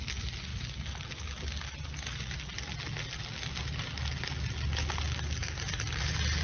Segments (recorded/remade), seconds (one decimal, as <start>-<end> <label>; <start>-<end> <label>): 0.0-6.4 recorded